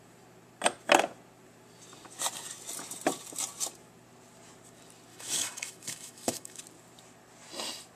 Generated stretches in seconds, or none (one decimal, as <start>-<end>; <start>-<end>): 5.1-6.6